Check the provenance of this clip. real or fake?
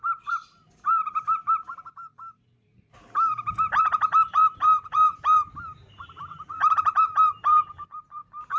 fake